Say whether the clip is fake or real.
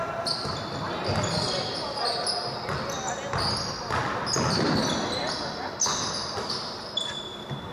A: real